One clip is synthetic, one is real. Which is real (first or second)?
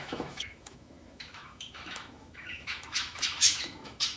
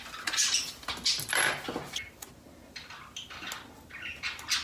second